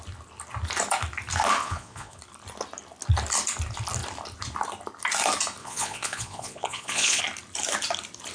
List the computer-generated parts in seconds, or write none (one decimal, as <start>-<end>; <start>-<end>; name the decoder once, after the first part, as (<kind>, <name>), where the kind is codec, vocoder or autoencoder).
1.6-2.2 (vocoder, Vocos); 5.6-7.2